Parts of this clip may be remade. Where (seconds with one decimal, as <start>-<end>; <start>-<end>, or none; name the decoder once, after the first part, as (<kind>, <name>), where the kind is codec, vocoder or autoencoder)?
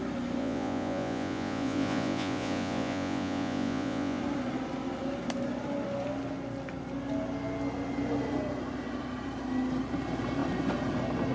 0.4-4.2 (vocoder, Vocos)